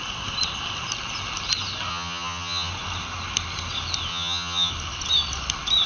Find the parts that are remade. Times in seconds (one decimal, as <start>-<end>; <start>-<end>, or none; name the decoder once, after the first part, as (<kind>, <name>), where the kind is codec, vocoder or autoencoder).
1.9-2.7 (vocoder, HiFi-GAN); 4.1-4.7